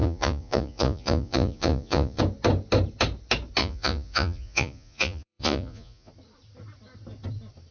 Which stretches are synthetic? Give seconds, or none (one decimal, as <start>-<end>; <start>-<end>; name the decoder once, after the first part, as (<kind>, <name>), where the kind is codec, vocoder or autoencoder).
0.0-2.2 (vocoder, Vocos); 3.6-6.1